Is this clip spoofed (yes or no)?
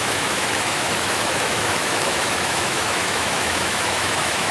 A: yes